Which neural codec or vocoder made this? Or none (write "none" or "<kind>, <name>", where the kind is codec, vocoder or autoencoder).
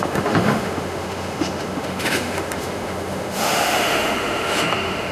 autoencoder, DAC-VAE